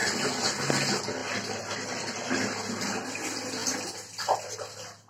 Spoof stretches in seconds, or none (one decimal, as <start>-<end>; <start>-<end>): none